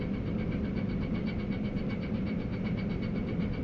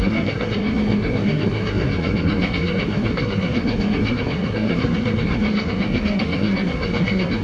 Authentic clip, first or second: first